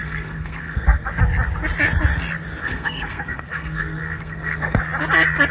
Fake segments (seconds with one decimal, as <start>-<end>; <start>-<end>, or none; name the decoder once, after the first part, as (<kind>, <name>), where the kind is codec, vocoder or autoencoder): 0.0-1.2 (codec, SNAC); 2.6-4.8